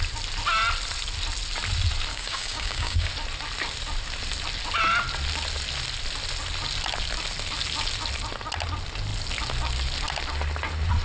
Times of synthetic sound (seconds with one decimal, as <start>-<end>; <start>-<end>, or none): 2.1-3.1